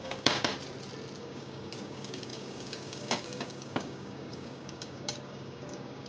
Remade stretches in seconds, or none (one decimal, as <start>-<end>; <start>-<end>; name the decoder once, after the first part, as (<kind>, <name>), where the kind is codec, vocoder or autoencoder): 0.0-0.5 (codec, DAC); 1.2-6.1